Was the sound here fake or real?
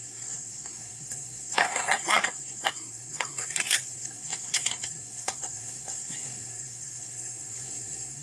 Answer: fake